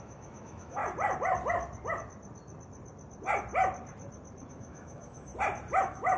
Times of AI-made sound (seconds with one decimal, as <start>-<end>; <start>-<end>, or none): 0.0-0.8; 4.5-5.3; 5.8-6.2